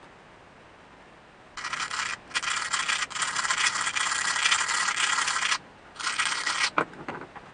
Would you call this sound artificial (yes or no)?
no